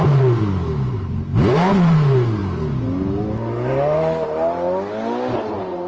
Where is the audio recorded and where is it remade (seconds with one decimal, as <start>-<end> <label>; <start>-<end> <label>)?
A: 0.0-2.4 remade; 2.4-5.5 recorded; 5.5-5.9 remade